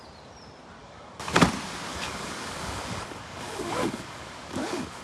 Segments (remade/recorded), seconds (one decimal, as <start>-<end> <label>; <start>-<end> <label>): 0.0-0.8 recorded; 0.8-1.4 remade; 1.4-1.9 recorded; 1.9-5.0 remade